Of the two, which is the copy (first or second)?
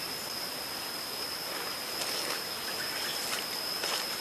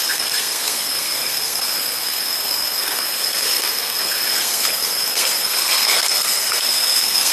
second